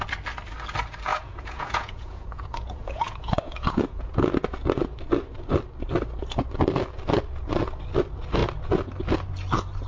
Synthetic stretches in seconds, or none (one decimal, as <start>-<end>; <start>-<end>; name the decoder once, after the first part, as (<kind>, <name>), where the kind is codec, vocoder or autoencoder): 1.1-4.3 (vocoder, Vocos)